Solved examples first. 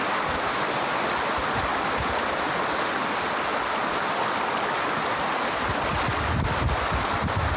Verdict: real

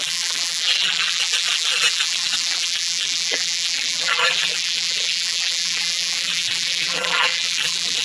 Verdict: fake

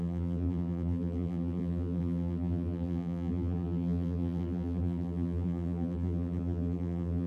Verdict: fake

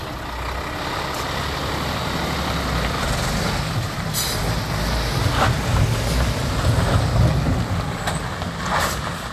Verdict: real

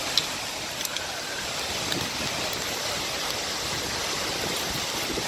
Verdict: real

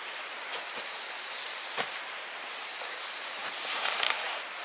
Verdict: fake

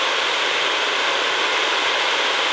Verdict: fake